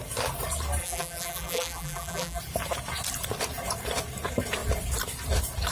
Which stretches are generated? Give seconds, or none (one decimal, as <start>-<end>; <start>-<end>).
0.8-2.4